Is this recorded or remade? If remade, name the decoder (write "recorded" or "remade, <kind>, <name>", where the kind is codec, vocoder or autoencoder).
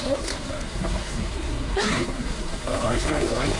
remade, codec, SNAC